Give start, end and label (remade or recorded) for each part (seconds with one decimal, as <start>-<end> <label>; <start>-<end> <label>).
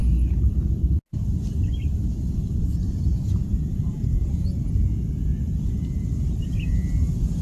0.0-7.4 recorded